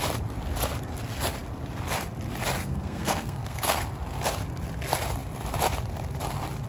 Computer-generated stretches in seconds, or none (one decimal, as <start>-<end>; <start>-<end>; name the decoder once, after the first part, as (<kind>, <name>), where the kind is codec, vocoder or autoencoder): 2.6-3.8 (codec, SNAC)